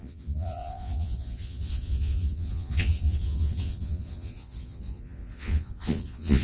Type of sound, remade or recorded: remade